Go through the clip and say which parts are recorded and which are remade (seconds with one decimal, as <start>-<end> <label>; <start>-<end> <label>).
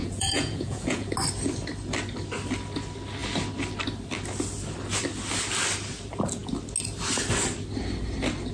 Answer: 0.0-1.1 remade; 1.1-8.5 recorded